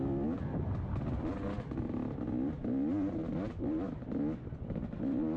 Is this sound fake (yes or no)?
no